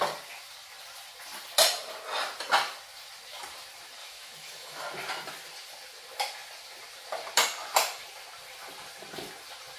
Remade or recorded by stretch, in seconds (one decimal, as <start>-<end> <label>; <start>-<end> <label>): 0.0-4.0 recorded; 4.0-4.8 remade; 4.8-9.8 recorded